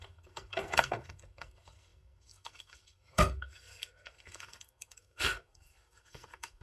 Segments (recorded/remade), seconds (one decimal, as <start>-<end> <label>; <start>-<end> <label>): 0.0-6.6 remade